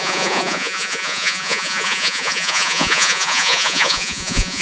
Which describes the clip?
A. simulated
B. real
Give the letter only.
A